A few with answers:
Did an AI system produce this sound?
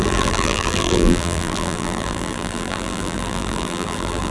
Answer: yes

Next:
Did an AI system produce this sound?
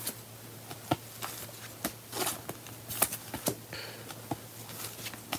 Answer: no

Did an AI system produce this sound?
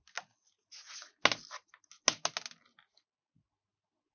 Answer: no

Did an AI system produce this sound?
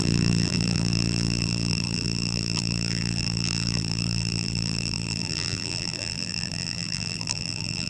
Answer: yes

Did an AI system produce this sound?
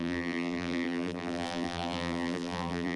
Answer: yes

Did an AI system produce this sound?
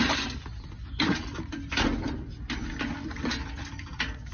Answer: no